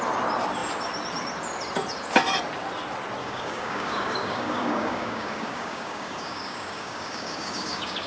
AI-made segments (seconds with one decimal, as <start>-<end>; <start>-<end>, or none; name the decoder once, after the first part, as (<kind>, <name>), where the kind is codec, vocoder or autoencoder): 3.2-8.1 (codec, DAC)